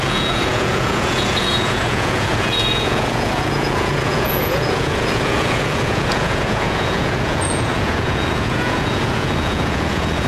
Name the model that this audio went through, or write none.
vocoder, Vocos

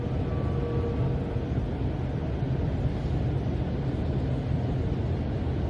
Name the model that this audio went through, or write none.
none